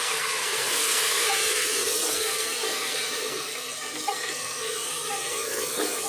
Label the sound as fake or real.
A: fake